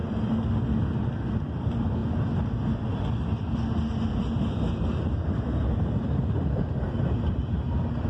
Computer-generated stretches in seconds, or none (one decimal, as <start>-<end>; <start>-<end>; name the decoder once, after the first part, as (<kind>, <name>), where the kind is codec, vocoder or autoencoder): 0.6-2.0 (vocoder, BigVGAN v2); 6.5-8.1